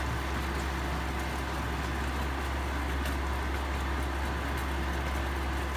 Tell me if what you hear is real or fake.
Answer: real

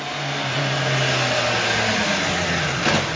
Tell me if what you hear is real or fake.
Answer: real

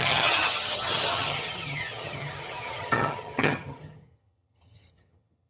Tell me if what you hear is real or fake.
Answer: fake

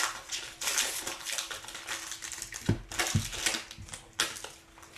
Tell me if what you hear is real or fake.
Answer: real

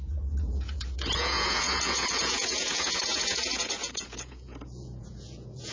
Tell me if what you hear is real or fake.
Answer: fake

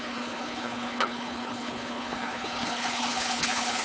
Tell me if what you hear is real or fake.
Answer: fake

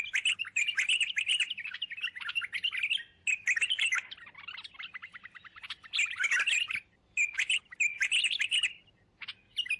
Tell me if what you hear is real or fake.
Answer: real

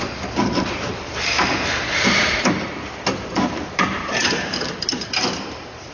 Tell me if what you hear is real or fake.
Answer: fake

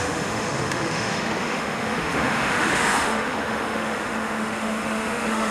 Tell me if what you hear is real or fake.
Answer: fake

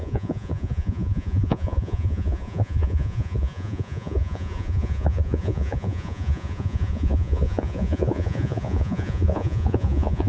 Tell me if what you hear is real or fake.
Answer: fake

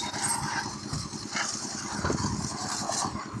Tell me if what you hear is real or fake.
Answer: real